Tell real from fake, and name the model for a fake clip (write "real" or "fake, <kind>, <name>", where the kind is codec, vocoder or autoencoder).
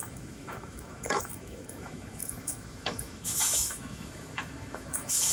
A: fake, autoencoder, DAC-VAE